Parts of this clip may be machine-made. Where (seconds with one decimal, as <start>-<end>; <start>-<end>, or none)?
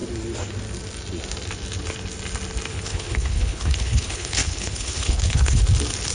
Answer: 2.7-5.6